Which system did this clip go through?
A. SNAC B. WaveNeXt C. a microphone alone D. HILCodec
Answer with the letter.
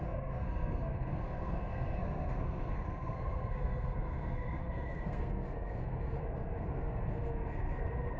A